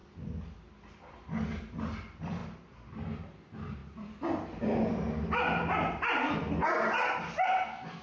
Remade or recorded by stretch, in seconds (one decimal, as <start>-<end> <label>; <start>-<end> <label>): 0.0-8.0 recorded